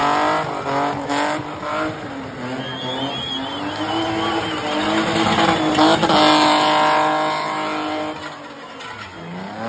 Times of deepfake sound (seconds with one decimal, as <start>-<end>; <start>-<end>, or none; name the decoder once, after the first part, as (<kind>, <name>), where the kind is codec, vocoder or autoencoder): none